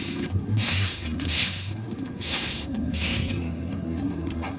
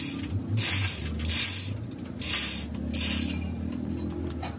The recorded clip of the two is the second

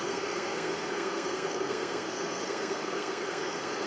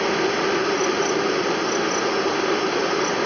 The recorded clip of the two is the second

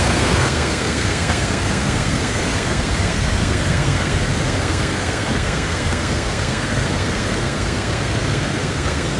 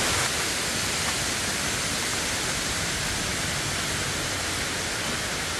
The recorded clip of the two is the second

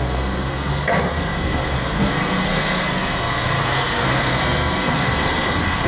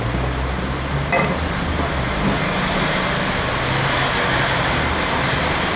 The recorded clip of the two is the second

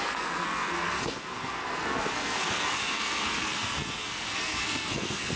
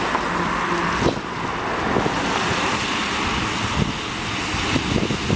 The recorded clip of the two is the second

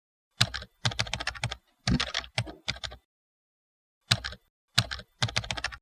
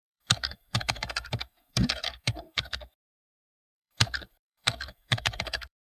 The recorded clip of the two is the first